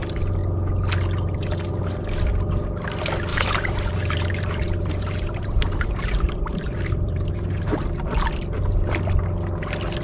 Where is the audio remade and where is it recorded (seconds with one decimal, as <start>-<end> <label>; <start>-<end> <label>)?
0.0-3.3 recorded; 3.3-8.0 remade; 8.0-10.0 recorded